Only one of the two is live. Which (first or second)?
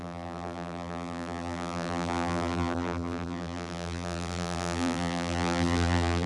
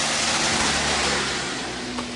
second